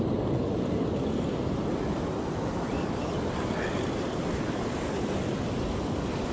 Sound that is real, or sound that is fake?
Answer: real